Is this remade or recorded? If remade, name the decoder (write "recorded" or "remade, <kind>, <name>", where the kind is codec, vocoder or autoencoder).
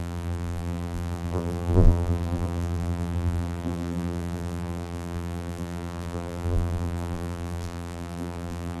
remade, vocoder, BigVGAN v2